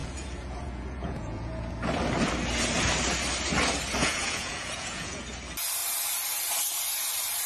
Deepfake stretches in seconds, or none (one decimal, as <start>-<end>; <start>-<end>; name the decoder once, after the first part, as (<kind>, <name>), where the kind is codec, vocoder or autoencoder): 0.0-1.6 (vocoder, Vocos); 4.0-5.2